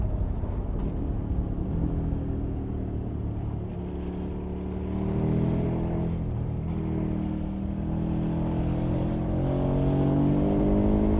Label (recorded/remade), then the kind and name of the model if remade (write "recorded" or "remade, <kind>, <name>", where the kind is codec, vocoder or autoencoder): recorded